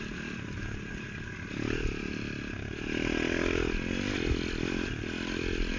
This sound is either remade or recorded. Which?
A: recorded